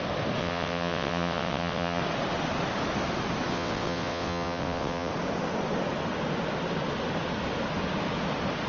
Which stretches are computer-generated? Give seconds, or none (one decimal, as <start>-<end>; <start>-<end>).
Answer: 0.4-2.0; 3.5-5.1